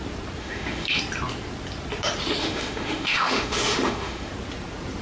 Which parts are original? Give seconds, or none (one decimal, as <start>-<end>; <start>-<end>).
0.0-0.4; 1.0-2.4; 4.3-5.0